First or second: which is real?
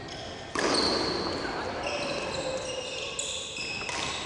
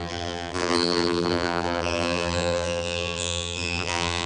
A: first